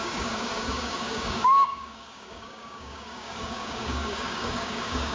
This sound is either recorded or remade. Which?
remade